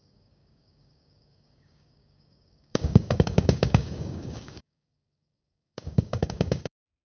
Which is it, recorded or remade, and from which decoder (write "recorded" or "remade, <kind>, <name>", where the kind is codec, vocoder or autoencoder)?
remade, codec, DAC